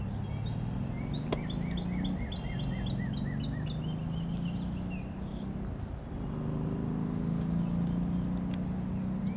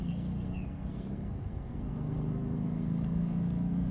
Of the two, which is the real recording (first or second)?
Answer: first